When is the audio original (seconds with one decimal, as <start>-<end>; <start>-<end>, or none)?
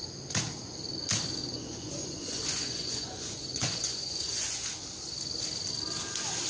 0.0-1.4; 4.6-6.5